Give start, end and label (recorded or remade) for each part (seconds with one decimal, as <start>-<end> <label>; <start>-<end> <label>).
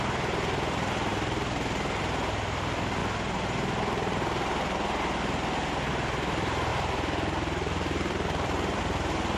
0.0-1.1 remade; 1.1-2.0 recorded; 2.0-3.0 remade; 3.0-5.9 recorded; 5.9-9.4 remade